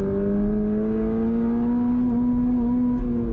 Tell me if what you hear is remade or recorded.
recorded